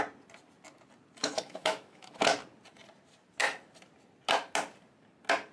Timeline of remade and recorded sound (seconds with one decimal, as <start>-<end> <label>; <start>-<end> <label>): 0.0-1.2 recorded; 1.2-2.3 remade; 2.3-5.5 recorded

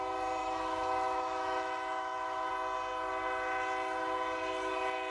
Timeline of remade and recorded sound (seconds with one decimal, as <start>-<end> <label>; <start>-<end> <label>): 0.0-0.4 recorded; 0.4-2.5 remade; 2.5-5.1 recorded

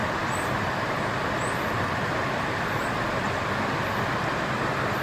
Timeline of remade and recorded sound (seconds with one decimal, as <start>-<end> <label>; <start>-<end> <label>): 0.0-5.0 recorded

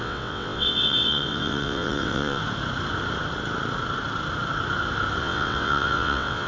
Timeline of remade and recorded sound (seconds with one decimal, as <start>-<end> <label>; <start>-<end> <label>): 0.0-2.4 remade; 2.4-5.2 recorded; 5.2-6.5 remade